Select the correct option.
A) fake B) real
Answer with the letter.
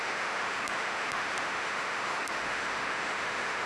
A